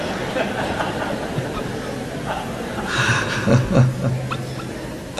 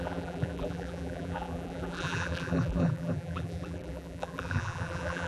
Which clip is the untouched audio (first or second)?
first